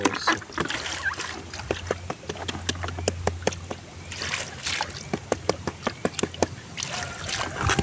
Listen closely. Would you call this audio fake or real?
real